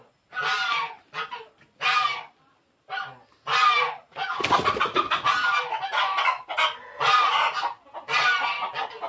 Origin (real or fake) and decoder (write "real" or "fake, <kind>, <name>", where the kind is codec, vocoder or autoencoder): real